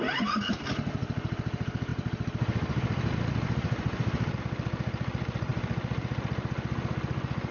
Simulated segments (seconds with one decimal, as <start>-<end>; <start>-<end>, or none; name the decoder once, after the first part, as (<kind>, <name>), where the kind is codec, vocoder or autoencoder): none